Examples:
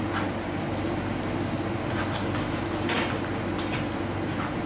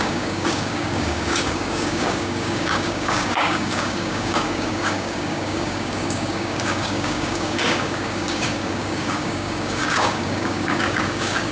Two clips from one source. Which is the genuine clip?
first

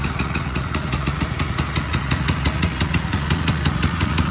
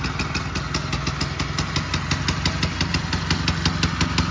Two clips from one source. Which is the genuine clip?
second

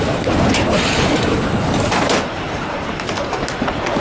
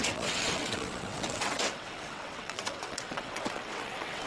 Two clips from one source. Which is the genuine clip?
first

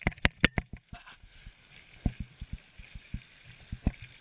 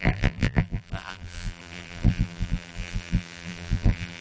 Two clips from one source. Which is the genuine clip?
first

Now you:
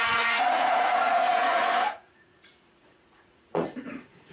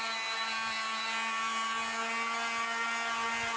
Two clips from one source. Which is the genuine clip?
second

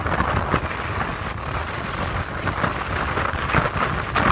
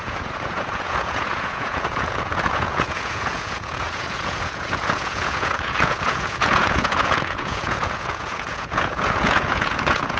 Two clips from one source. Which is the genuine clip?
first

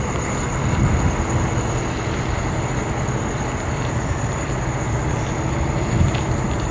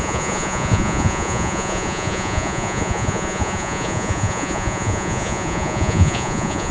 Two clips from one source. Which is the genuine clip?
first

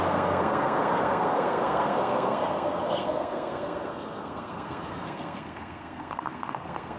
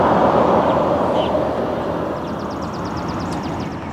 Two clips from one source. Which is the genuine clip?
second